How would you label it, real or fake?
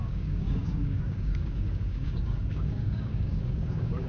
fake